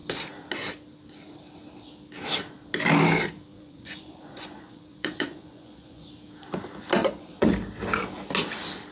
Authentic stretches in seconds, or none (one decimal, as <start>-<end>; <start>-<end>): 0.0-3.5; 6.1-7.0; 7.5-8.9